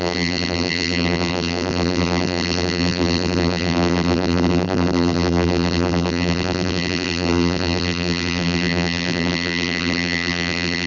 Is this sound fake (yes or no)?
yes